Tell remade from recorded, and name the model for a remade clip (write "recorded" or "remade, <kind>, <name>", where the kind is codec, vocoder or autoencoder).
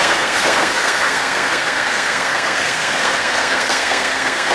remade, codec, SNAC